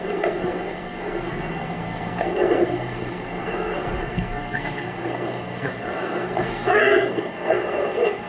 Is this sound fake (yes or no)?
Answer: yes